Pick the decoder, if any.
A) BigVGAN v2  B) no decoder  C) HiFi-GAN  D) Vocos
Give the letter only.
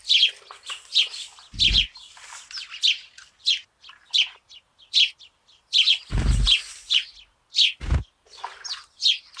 B